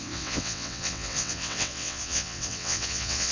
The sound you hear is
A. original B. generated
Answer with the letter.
B